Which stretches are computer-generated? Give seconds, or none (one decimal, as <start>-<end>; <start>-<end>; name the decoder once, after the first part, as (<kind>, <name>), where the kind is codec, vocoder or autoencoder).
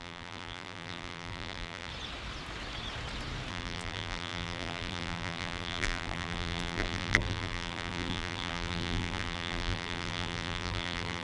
0.0-1.9 (vocoder, BigVGAN v2); 3.5-11.2